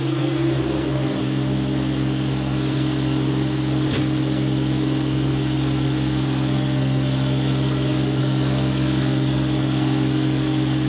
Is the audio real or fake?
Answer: fake